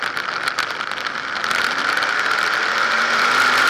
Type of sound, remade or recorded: remade